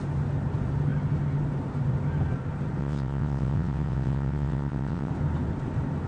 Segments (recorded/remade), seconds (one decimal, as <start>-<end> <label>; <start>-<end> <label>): 0.0-2.8 recorded; 2.8-5.1 remade; 5.1-6.1 recorded